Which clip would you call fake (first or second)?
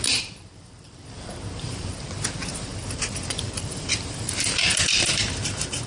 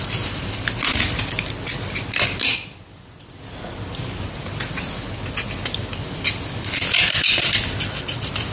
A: first